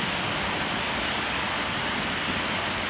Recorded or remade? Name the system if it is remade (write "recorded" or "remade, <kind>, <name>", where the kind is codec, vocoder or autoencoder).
recorded